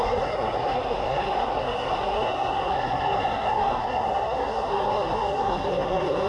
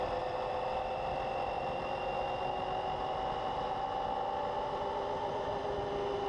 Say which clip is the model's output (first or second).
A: first